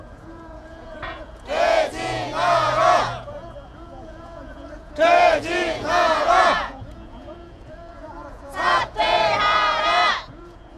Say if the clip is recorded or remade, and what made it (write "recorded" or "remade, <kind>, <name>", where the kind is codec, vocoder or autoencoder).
remade, vocoder, Vocos